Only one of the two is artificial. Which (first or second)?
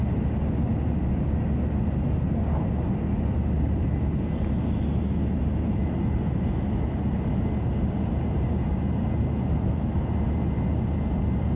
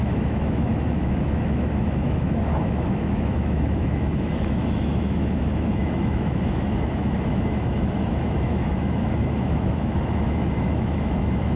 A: second